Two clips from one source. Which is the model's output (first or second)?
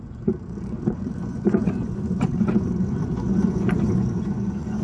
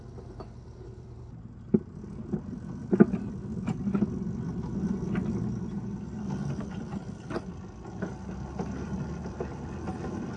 first